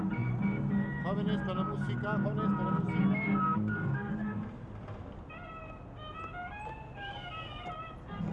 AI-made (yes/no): no